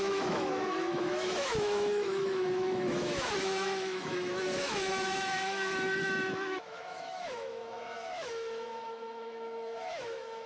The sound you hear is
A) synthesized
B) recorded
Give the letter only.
A